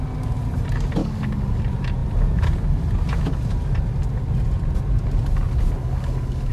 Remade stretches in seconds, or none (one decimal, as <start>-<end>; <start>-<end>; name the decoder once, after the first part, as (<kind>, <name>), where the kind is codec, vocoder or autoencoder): 1.0-1.6 (codec, DAC); 5.8-6.5